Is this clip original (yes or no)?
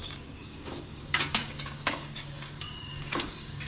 no